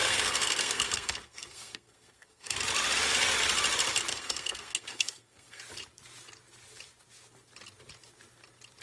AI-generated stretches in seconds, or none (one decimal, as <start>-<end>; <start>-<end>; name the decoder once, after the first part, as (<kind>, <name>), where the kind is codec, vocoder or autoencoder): 0.0-2.6 (codec, SNAC); 4.1-5.6